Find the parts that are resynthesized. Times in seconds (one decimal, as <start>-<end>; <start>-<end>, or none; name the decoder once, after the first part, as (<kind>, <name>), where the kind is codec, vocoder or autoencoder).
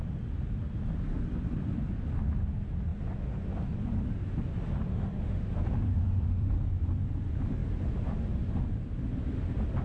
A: 4.9-5.5 (autoencoder, DAC-VAE); 5.9-6.5